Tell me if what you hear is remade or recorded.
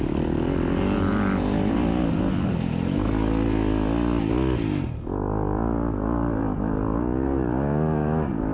recorded